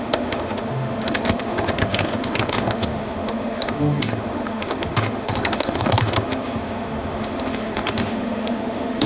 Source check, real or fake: fake